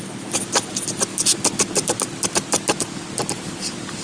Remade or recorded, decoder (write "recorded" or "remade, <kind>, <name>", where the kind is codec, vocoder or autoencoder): recorded